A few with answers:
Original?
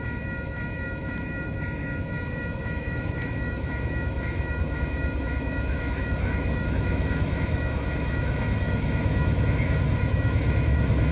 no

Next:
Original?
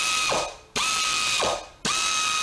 yes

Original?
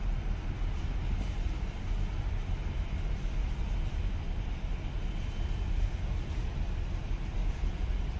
yes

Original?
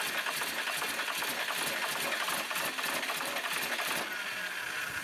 yes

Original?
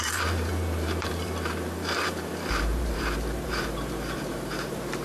no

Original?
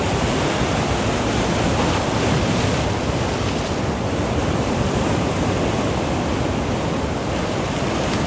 yes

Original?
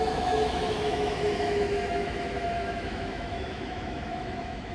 no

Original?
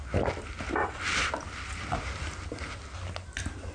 yes